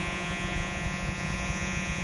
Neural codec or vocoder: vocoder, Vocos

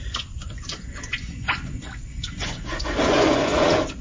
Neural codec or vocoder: vocoder, Vocos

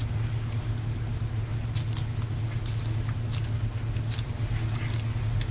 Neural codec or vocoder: none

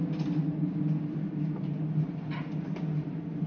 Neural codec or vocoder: none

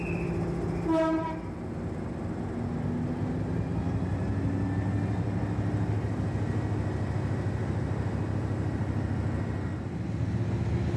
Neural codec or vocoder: none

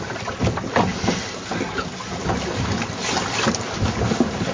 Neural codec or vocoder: none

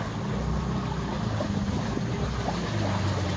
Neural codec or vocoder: none